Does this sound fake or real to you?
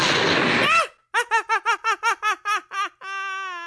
real